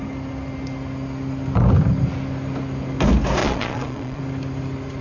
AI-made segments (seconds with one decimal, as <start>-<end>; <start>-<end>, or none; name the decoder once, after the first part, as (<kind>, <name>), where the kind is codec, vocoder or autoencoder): 3.4-4.2 (vocoder, Vocos)